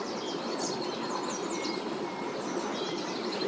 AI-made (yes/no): no